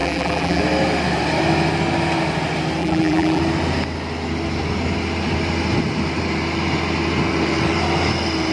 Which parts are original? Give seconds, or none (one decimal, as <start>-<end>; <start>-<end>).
0.6-2.8; 3.4-8.5